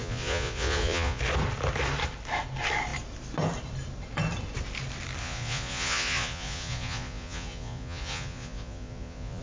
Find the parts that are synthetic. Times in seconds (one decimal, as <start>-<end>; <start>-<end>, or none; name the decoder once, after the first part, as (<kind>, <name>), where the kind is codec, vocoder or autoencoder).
0.0-1.2 (vocoder, Vocos); 5.2-9.4